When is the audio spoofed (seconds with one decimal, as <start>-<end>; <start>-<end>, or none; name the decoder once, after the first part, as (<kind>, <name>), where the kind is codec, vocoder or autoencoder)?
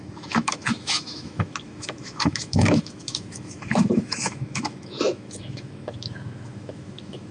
0.0-7.3 (autoencoder, DAC-VAE)